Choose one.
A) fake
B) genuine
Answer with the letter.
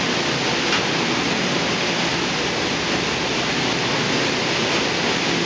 B